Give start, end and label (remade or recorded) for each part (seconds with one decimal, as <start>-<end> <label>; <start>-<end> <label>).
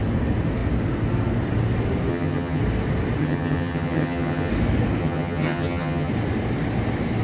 0.0-2.1 recorded; 2.1-2.6 remade; 2.6-3.2 recorded; 3.2-4.5 remade; 4.5-5.0 recorded; 5.0-6.1 remade; 6.1-7.2 recorded